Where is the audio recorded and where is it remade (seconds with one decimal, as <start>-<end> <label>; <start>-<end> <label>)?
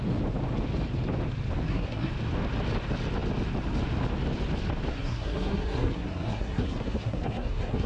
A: 0.0-1.6 recorded; 1.6-2.1 remade; 2.1-4.9 recorded; 4.9-7.9 remade